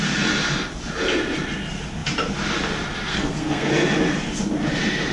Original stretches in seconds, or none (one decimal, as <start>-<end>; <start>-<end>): 0.0-3.1; 3.7-5.1